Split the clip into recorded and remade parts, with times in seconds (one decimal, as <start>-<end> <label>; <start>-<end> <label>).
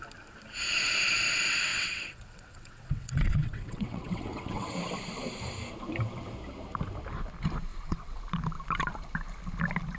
0.0-1.7 recorded; 1.7-4.8 remade; 4.8-7.7 recorded; 7.7-8.2 remade; 8.2-10.0 recorded